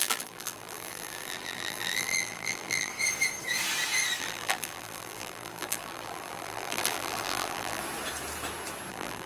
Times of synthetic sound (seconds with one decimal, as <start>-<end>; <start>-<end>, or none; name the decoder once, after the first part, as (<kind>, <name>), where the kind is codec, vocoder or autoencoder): 0.0-2.9 (vocoder, BigVGAN v2); 4.2-7.8; 8.9-9.3